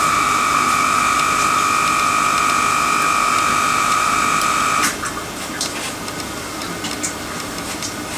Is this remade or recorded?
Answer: recorded